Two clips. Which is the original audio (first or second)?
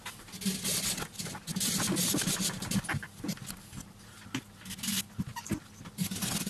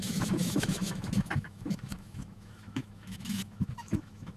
first